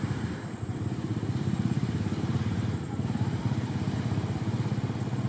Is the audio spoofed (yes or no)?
yes